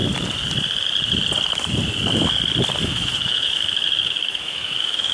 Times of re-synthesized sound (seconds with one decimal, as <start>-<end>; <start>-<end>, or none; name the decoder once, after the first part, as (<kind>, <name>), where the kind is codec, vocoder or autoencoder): 2.8-5.1 (autoencoder, DAC-VAE)